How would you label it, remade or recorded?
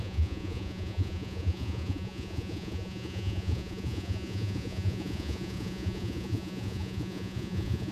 remade